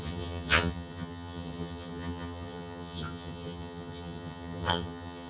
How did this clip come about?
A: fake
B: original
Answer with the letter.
A